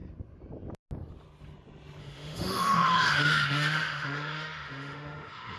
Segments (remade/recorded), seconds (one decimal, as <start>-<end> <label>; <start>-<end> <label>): 0.0-2.0 recorded; 2.0-5.6 remade